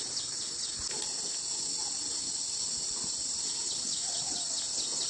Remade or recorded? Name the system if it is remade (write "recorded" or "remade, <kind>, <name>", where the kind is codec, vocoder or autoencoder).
recorded